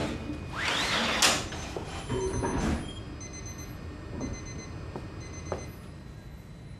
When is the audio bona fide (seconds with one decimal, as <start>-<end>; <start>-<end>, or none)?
0.0-6.8